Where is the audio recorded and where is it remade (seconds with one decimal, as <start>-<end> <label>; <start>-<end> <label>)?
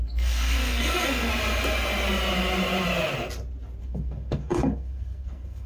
0.0-1.3 remade; 1.3-3.8 recorded; 3.8-5.7 remade